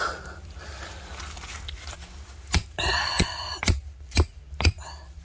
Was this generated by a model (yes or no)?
no